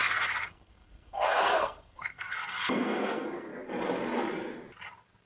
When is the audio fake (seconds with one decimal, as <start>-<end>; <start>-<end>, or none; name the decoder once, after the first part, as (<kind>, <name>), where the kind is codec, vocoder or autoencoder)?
0.0-3.5 (codec, SNAC)